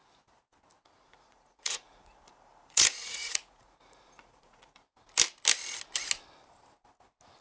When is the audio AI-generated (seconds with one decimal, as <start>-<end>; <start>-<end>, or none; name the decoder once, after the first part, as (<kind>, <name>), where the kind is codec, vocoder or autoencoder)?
1.0-4.8 (vocoder, Vocos)